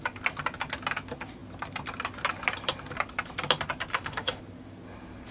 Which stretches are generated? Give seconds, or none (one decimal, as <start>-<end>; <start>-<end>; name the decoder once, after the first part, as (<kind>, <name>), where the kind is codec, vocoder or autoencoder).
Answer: 3.9-4.4 (autoencoder, DAC-VAE)